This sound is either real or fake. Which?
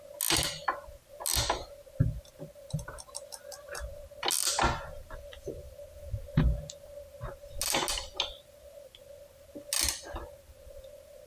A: real